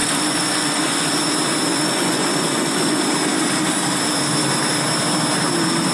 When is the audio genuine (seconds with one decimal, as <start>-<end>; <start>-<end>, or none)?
1.1-1.7; 3.0-5.9